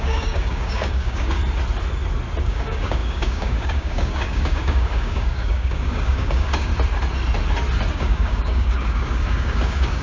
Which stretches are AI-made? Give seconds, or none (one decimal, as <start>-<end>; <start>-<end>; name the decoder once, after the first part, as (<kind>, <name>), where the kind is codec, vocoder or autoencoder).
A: 0.0-1.4 (codec, DAC); 2.4-6.7; 7.9-10.0